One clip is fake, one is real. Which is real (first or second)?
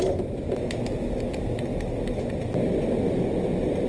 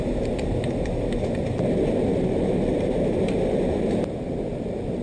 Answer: first